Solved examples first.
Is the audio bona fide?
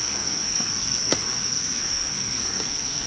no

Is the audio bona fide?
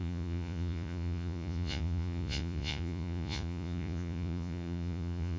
no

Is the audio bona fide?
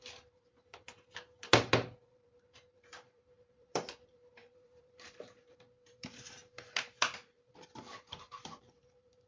no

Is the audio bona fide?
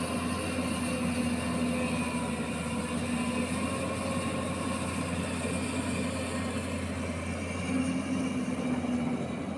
yes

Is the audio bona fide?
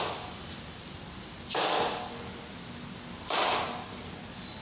yes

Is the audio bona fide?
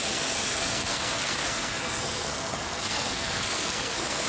no